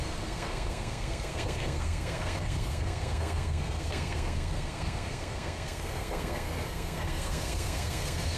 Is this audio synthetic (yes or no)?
yes